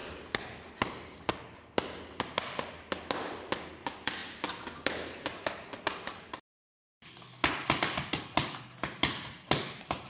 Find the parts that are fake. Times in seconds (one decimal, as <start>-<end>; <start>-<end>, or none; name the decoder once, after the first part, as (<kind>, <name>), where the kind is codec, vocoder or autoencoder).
none